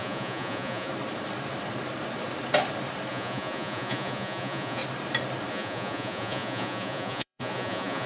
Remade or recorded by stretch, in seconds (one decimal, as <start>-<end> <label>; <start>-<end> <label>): 0.0-0.9 remade; 0.9-3.1 recorded; 3.1-4.8 remade; 4.8-5.5 recorded; 5.5-8.1 remade